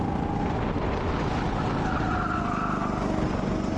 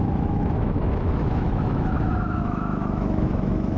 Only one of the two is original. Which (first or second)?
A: first